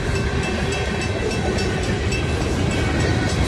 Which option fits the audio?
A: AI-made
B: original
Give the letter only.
B